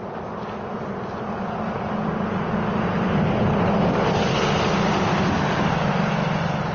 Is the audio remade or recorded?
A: recorded